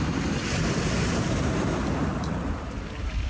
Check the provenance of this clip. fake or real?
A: real